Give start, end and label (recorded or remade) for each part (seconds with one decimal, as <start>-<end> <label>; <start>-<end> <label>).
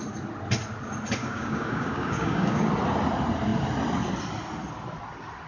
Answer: 0.0-1.2 recorded; 1.2-2.6 remade; 2.6-5.5 recorded